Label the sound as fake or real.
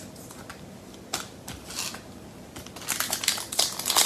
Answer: real